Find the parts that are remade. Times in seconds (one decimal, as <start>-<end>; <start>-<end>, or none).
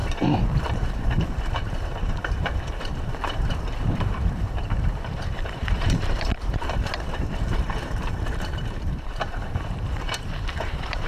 0.0-11.1